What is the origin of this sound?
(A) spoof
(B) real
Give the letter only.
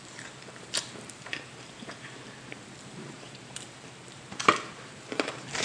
A